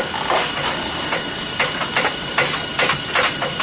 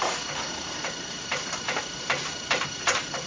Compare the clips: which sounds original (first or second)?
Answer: first